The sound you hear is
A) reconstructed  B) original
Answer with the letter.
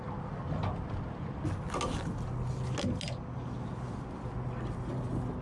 B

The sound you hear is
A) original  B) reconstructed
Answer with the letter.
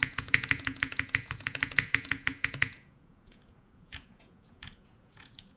B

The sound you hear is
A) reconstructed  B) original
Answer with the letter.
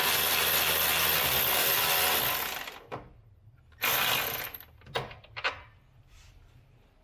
B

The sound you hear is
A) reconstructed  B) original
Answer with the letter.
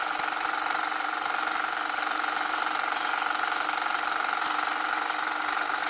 B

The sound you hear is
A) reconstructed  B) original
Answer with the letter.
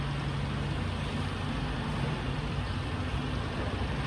B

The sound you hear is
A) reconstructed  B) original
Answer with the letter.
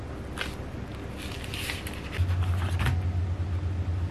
B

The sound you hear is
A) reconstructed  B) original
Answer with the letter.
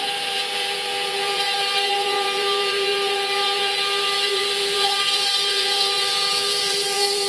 A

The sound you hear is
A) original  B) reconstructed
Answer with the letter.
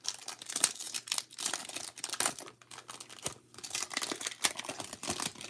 A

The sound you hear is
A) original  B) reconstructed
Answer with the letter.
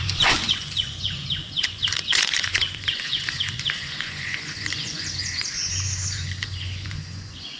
B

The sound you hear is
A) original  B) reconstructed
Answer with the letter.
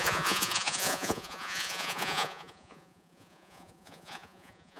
B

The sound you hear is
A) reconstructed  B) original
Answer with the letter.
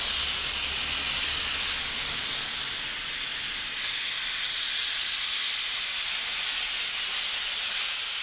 B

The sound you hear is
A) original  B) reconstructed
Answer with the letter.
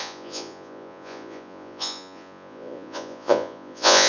B